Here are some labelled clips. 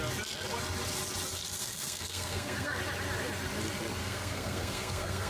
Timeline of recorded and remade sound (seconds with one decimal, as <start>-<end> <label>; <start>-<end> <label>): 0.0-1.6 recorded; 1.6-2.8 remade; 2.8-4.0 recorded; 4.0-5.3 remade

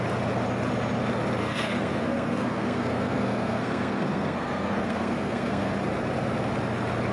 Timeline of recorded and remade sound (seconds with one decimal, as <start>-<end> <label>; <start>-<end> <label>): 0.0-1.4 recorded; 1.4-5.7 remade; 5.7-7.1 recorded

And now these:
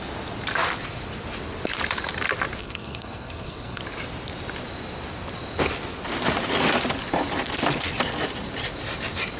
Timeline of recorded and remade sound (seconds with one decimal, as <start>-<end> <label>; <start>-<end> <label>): 0.0-2.6 recorded; 2.6-3.8 remade; 3.8-9.4 recorded

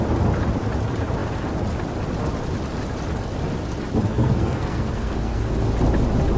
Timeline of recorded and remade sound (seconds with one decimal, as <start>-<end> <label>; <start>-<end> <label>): 0.0-4.0 recorded; 4.0-5.4 remade; 5.4-6.4 recorded

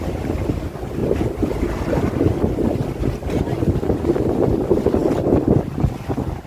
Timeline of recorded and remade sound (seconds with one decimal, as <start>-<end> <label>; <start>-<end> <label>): 0.0-6.5 recorded

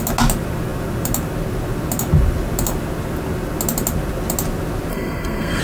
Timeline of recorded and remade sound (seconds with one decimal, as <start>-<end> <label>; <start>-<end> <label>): 0.0-4.9 recorded; 4.9-5.6 remade